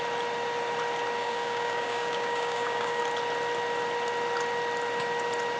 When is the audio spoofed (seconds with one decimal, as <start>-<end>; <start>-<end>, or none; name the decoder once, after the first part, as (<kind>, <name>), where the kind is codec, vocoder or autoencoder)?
1.2-3.0 (codec, DAC)